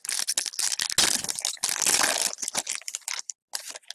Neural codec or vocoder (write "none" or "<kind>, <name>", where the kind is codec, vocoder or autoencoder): none